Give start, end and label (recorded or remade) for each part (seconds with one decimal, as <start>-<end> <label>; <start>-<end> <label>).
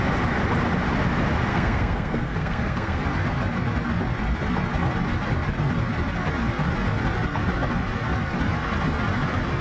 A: 0.0-1.5 recorded; 1.5-3.0 remade; 3.0-9.6 recorded